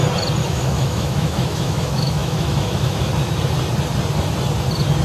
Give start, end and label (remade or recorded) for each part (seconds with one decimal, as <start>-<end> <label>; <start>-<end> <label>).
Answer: 0.0-0.4 recorded; 0.4-3.1 remade; 3.1-5.0 recorded